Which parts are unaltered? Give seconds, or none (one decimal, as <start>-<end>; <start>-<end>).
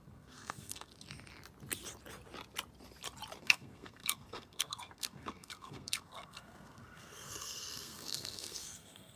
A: 0.9-3.4